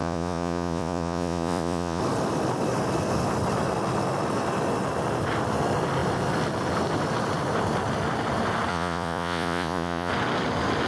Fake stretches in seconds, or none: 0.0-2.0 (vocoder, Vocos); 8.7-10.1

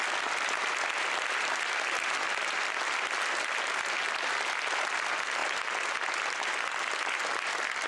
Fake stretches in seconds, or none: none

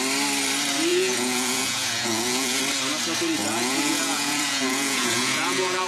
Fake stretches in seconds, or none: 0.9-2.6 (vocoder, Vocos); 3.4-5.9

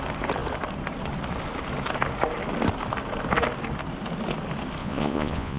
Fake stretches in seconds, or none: 4.8-5.6 (vocoder, Vocos)